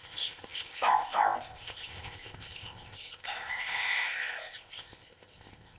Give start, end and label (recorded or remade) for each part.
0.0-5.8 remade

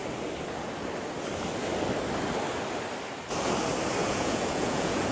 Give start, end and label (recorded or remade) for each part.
0.0-4.0 recorded; 4.0-5.1 remade

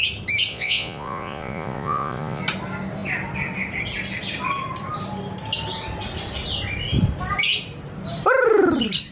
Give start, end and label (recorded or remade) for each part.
0.0-0.5 recorded; 0.5-2.4 remade; 2.4-9.1 recorded

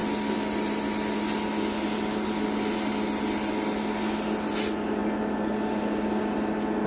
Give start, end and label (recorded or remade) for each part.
0.0-6.9 recorded

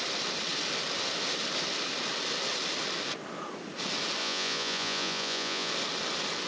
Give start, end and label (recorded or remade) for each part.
0.0-4.2 recorded; 4.2-5.7 remade; 5.7-6.5 recorded

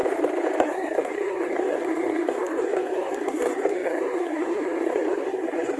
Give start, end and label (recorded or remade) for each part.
0.0-0.6 recorded; 0.6-5.8 remade

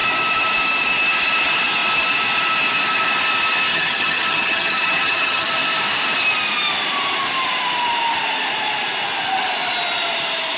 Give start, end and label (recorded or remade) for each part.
0.0-3.7 recorded; 3.7-5.5 remade; 5.5-10.6 recorded

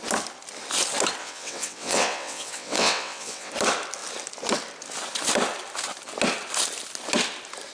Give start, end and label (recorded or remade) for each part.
0.0-1.2 recorded; 1.2-3.5 remade; 3.5-7.7 recorded